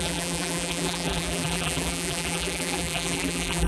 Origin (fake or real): fake